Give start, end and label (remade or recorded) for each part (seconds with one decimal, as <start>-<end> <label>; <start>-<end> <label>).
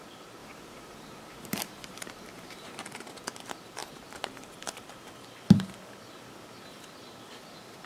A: 0.0-0.4 recorded; 0.4-2.8 remade; 2.8-3.8 recorded; 3.8-5.1 remade; 5.1-7.9 recorded